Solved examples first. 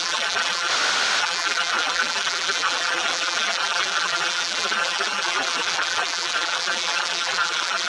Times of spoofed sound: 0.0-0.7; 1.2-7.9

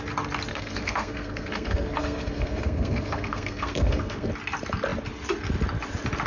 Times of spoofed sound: 0.5-4.3